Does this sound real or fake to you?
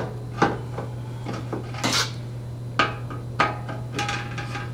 real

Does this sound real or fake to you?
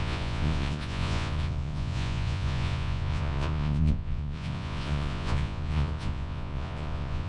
fake